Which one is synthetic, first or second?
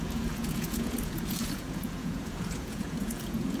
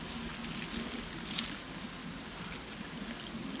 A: first